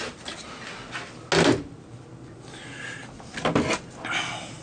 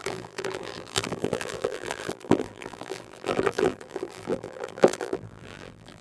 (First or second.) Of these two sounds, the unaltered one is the first